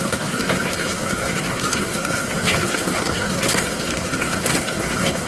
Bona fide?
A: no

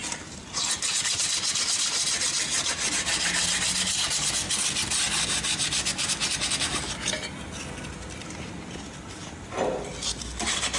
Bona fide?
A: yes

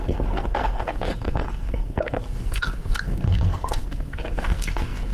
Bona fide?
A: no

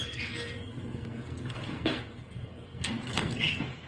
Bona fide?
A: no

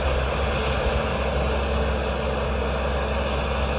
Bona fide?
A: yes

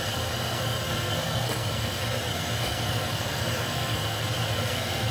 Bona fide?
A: no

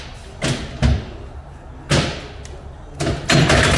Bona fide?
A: yes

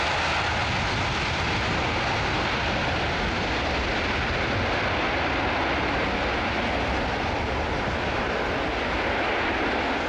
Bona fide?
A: yes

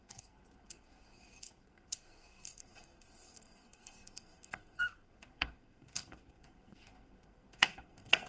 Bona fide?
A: no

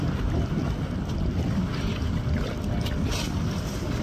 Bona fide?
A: yes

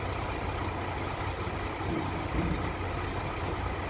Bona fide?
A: yes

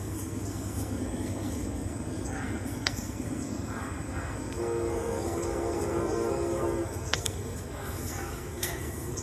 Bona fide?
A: no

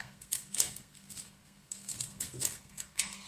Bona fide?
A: no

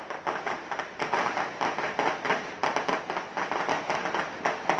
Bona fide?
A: yes